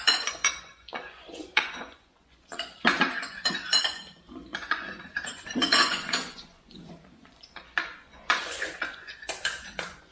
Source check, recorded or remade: remade